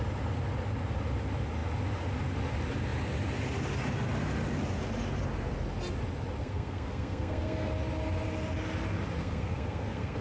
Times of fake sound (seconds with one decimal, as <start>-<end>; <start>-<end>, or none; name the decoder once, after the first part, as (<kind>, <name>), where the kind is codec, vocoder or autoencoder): 6.4-7.7 (codec, SNAC); 9.2-10.2